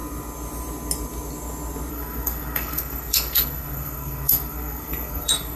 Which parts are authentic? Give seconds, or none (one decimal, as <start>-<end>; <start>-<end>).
0.0-1.9